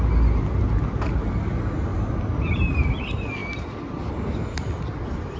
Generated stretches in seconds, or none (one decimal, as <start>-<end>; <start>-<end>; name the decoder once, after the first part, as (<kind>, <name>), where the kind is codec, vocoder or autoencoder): none